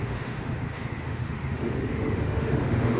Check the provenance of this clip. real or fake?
fake